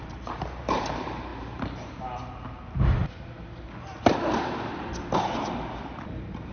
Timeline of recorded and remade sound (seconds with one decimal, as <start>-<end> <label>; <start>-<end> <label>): 0.0-3.0 remade; 3.0-6.5 recorded